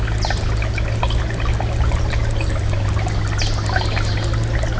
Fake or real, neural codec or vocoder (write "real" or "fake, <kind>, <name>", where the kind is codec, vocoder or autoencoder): real